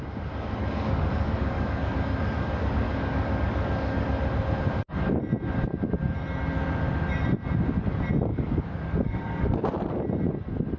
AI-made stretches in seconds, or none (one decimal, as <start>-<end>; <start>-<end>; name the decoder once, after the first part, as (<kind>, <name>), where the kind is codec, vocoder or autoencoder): 0.6-4.2 (codec, DAC); 8.3-9.6